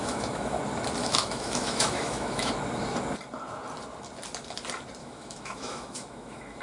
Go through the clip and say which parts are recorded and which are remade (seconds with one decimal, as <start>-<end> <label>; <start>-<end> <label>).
0.0-0.6 remade; 0.6-1.0 recorded; 1.0-2.5 remade; 2.5-5.0 recorded; 5.0-6.6 remade